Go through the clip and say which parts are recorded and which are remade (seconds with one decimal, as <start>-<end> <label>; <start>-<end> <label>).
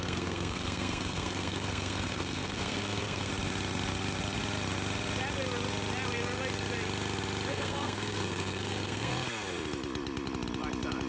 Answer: 0.0-3.3 remade; 3.3-7.5 recorded; 7.5-9.1 remade; 9.1-11.1 recorded